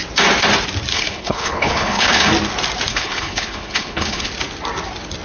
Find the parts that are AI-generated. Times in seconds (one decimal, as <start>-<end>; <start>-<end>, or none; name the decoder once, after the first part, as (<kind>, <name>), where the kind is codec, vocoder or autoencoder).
0.9-2.3 (codec, HILCodec); 2.9-4.3